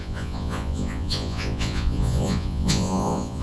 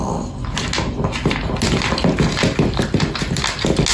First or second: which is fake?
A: first